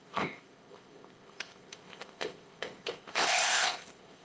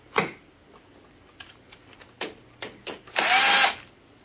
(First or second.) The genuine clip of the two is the second